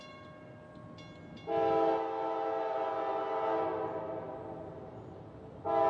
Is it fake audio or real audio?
real